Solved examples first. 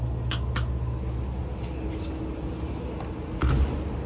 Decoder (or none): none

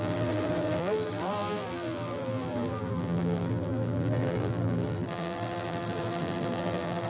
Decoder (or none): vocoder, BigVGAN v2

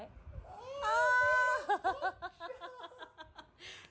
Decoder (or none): none